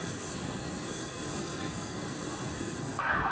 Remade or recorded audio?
remade